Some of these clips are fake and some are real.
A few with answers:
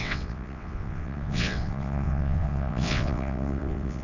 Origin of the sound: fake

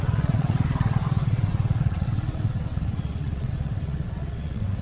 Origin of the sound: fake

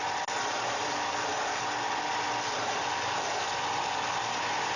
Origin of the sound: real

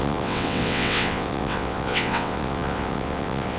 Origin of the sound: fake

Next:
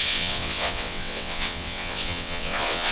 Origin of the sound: fake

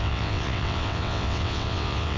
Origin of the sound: fake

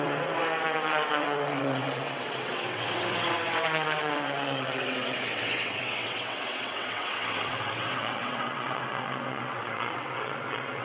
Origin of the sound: fake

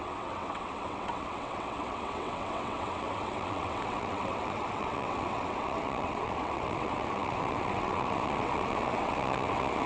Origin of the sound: fake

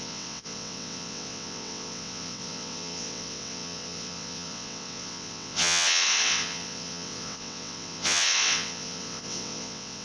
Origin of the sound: fake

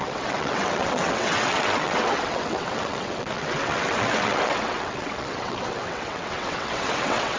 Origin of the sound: fake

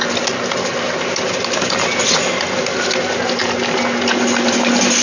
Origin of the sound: real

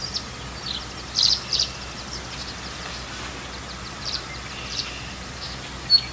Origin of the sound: real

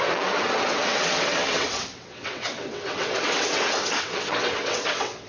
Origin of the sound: fake